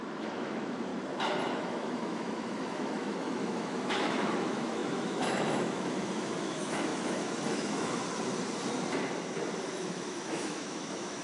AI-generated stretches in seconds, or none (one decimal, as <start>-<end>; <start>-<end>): 0.0-0.9; 1.6-8.0; 9.6-11.2